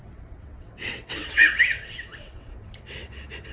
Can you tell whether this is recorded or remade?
remade